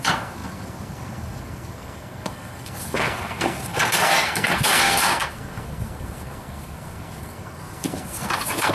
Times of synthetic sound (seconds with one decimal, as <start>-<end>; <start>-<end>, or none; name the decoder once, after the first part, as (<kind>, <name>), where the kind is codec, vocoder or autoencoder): 0.0-8.7 (codec, SNAC)